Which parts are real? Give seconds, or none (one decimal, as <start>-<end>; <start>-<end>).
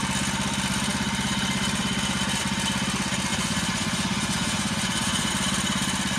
0.0-3.3; 5.3-6.2